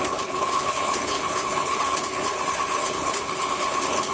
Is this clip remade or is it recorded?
remade